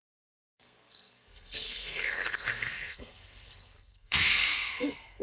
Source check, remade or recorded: remade